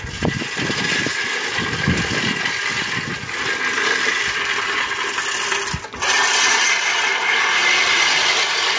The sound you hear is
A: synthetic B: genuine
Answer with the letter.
B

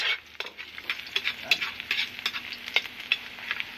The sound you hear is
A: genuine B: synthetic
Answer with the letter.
A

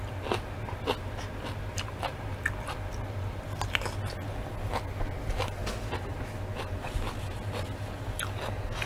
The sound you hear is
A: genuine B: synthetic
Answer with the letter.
A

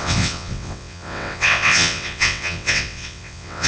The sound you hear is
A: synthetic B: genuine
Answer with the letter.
A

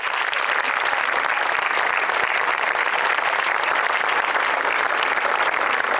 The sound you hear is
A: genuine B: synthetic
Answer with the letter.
A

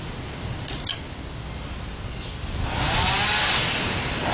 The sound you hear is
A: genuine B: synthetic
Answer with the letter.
A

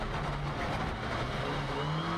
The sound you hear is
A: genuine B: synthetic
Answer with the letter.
A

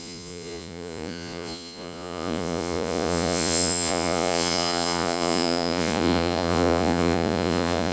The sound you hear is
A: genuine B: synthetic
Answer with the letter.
B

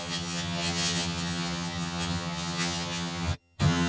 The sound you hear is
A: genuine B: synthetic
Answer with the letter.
B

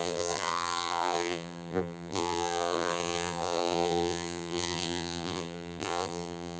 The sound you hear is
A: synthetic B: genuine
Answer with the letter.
A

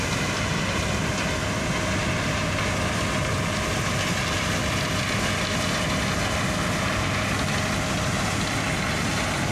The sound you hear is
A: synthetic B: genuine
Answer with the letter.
B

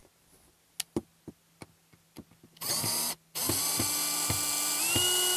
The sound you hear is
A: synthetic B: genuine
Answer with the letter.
B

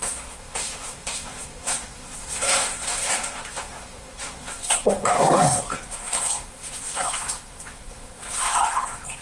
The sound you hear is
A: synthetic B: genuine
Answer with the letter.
A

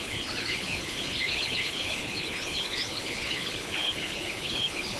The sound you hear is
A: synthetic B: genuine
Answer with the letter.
A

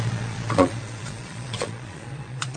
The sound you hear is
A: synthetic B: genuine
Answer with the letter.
A